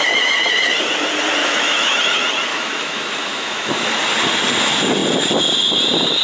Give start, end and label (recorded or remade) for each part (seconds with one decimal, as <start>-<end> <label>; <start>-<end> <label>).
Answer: 0.0-1.4 recorded; 1.4-2.0 remade; 2.0-2.5 recorded; 2.5-3.9 remade; 3.9-6.2 recorded

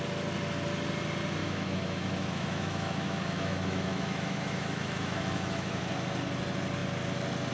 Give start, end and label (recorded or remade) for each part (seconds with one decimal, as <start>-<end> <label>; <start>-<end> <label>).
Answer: 0.0-1.4 recorded; 1.4-5.9 remade; 5.9-7.5 recorded

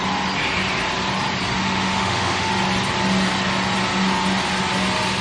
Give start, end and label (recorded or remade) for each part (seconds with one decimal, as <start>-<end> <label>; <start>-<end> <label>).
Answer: 0.0-1.6 recorded; 1.6-2.5 remade; 2.5-5.2 recorded

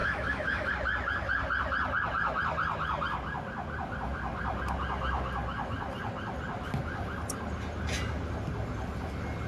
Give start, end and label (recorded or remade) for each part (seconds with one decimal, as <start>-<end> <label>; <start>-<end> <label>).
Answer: 0.0-0.7 remade; 0.7-9.5 recorded

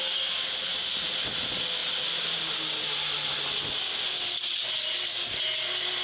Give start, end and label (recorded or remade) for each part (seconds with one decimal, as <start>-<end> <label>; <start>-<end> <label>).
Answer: 0.0-6.0 recorded

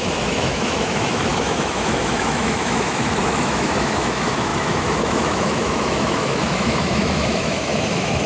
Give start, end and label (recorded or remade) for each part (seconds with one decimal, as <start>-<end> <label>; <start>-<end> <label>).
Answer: 0.0-8.3 remade

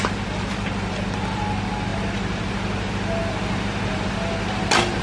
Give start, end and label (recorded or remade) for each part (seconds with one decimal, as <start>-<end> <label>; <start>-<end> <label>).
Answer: 0.0-5.0 recorded